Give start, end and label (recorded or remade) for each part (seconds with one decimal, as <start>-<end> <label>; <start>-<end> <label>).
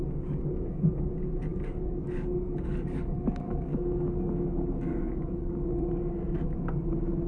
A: 0.0-1.1 remade; 1.1-1.5 recorded; 1.5-5.9 remade; 5.9-7.3 recorded